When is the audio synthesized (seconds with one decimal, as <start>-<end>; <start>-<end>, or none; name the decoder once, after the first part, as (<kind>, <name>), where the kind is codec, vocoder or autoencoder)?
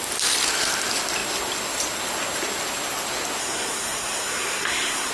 3.4-5.1 (codec, SNAC)